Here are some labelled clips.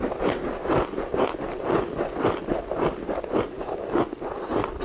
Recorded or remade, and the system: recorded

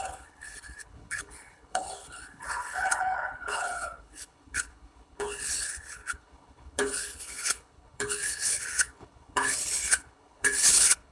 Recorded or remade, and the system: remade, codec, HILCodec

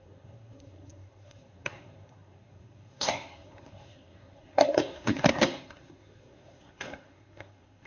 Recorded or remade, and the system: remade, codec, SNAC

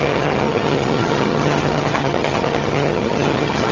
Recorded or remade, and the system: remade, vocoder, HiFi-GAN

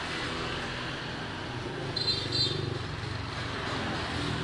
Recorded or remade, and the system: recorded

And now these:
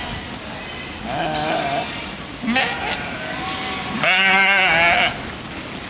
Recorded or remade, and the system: recorded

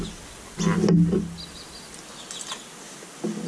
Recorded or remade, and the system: recorded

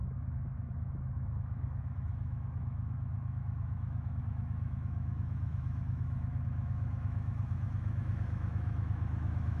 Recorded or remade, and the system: remade, autoencoder, DAC-VAE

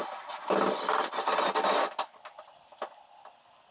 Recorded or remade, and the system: recorded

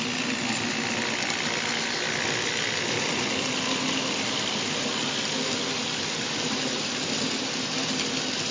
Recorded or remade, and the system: recorded